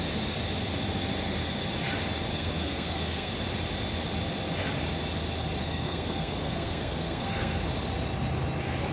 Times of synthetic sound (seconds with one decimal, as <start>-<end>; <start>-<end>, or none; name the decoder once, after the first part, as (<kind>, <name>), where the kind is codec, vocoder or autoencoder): 2.3-3.3 (codec, SNAC); 5.6-7.6